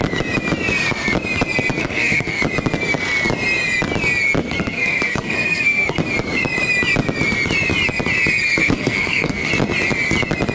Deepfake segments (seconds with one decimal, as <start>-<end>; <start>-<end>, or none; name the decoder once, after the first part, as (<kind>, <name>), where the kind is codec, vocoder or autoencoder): 1.8-2.4 (codec, SNAC); 4.4-6.0; 8.6-9.5